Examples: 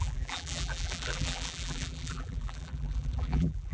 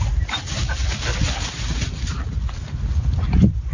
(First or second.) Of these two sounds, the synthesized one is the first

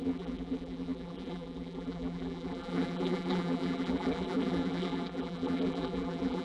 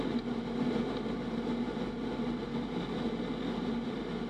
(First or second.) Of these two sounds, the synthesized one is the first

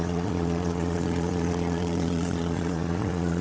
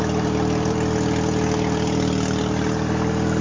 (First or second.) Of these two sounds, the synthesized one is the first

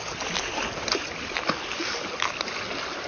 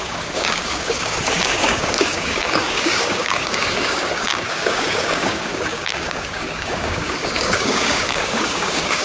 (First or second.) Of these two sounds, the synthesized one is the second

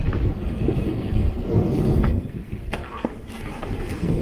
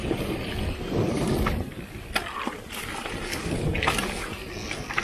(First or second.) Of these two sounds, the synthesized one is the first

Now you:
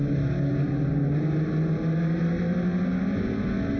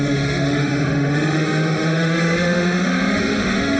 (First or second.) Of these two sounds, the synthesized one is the second